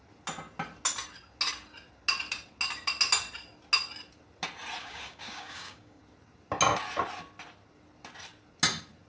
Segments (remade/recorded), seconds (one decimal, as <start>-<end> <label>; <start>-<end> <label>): 0.0-4.8 recorded; 4.8-6.0 remade; 6.0-9.1 recorded